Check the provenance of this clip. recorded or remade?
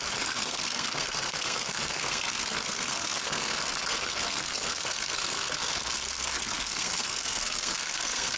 remade